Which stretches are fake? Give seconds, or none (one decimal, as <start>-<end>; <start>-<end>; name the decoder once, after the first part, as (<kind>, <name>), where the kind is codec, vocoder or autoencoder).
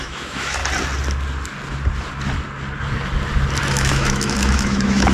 0.0-0.6 (autoencoder, DAC-VAE); 3.7-5.1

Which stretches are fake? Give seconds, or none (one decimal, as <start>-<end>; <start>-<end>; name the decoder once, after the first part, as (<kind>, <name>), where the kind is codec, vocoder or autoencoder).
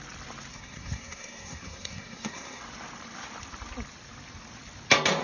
0.5-2.6 (codec, SNAC)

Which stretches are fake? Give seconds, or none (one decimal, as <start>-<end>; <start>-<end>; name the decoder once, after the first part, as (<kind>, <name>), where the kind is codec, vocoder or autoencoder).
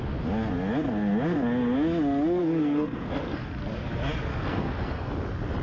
2.4-3.4 (codec, SNAC); 4.3-5.1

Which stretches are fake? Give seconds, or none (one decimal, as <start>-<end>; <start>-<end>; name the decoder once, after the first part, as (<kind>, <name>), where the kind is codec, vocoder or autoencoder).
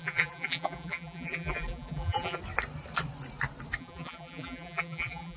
0.0-2.4 (vocoder, BigVGAN v2); 3.8-5.4